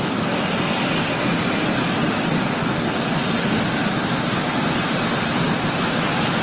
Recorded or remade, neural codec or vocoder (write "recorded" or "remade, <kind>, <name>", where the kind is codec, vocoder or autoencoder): recorded